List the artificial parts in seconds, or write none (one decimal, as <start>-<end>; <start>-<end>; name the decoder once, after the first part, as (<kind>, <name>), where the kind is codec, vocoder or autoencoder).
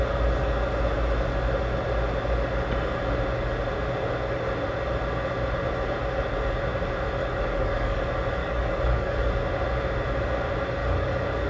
7.2-8.0 (codec, DAC); 8.4-9.3; 10.8-11.5